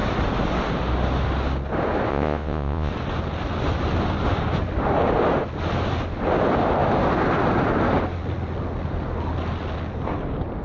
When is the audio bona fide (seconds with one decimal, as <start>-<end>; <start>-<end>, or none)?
0.0-2.1; 2.9-10.6